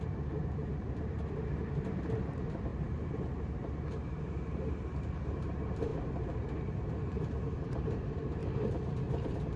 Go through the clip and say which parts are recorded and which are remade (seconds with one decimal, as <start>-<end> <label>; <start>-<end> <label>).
0.0-5.9 remade; 5.9-7.1 recorded; 7.1-8.4 remade; 8.4-9.1 recorded; 9.1-9.6 remade

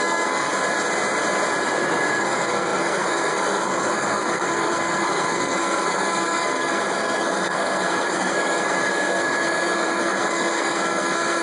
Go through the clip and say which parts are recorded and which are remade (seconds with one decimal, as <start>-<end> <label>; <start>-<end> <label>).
0.0-0.5 remade; 0.5-2.1 recorded; 2.1-11.4 remade